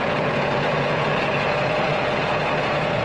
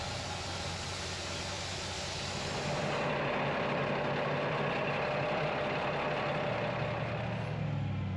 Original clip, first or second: second